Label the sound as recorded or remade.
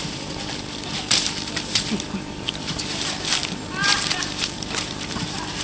remade